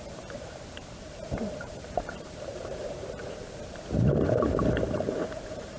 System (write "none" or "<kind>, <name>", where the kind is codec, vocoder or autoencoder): vocoder, BigVGAN v2